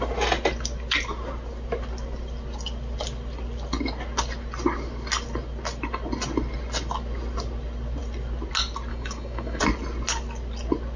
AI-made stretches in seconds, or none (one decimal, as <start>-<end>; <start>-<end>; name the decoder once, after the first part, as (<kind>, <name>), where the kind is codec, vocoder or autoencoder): 8.9-9.6 (codec, DAC)